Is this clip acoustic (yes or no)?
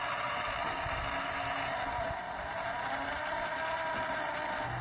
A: yes